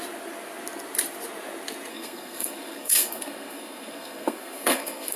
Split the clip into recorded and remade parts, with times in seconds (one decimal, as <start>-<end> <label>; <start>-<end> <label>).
0.0-1.9 recorded; 1.9-5.2 remade